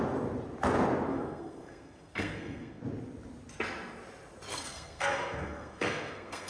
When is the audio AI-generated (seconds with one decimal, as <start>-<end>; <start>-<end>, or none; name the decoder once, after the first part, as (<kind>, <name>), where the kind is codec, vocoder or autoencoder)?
1.1-2.8 (codec, SNAC); 4.5-6.5